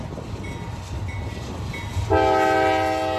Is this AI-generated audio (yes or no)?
no